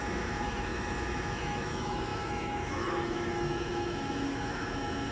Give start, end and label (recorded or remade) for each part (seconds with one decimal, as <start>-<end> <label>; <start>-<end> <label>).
0.0-5.1 remade

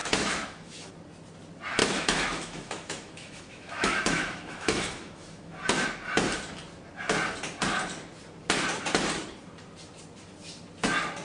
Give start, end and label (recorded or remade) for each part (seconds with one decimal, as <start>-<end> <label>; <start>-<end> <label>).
0.0-0.9 remade; 0.9-1.8 recorded; 1.8-5.6 remade; 5.6-11.2 recorded

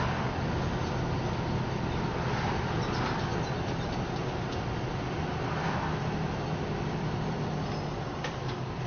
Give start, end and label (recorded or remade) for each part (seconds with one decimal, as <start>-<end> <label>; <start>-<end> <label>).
0.0-8.9 recorded

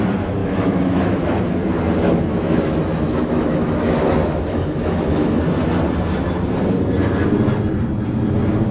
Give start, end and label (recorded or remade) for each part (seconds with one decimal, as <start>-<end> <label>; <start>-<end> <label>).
0.0-0.4 recorded; 0.4-1.4 remade; 1.4-2.3 recorded; 2.3-5.4 remade; 5.4-8.7 recorded

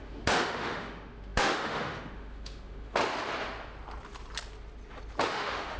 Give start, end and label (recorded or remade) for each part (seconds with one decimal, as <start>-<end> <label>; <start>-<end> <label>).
0.0-3.0 remade; 3.0-5.3 recorded; 5.3-5.8 remade